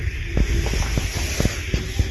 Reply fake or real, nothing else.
real